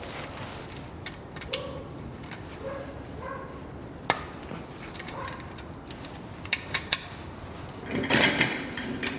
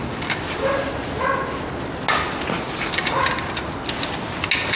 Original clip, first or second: second